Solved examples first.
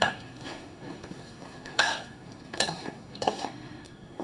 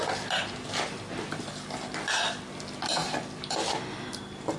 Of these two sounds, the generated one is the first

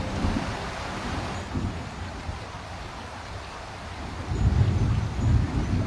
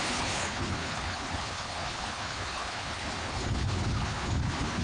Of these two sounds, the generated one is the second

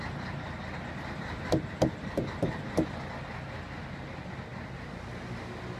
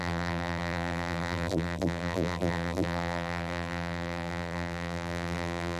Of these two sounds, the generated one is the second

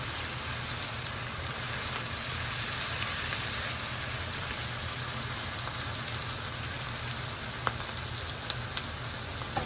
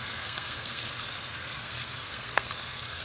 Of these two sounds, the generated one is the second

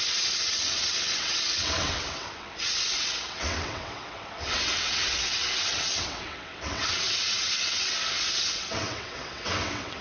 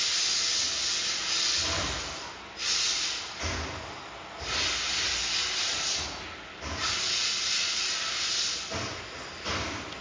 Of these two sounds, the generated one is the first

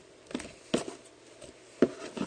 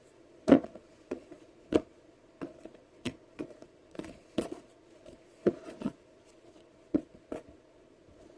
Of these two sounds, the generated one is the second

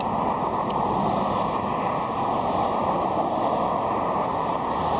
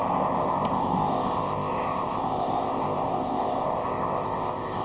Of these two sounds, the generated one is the second